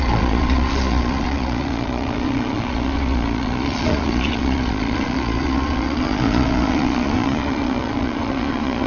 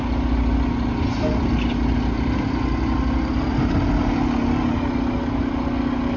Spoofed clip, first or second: first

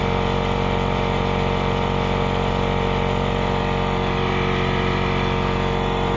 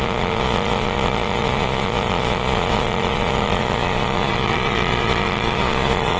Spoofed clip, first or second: second